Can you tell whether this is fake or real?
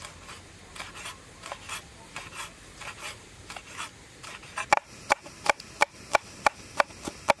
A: real